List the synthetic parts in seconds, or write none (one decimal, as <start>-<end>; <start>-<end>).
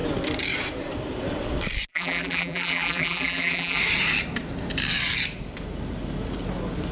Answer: 1.9-3.8